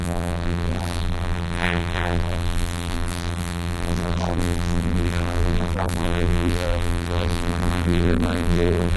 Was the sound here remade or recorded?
remade